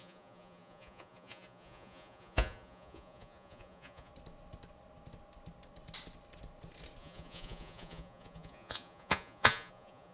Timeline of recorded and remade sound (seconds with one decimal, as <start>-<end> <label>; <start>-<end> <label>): 0.0-4.1 remade; 4.1-7.0 recorded; 7.0-10.1 remade

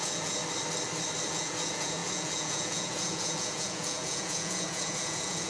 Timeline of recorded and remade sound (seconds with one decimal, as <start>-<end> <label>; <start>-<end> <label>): 0.0-0.4 remade; 0.4-1.3 recorded; 1.3-5.5 remade